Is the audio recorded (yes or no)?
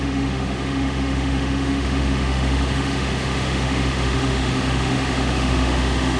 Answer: no